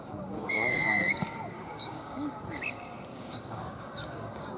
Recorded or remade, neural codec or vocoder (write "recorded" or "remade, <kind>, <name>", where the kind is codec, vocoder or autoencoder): remade, codec, DAC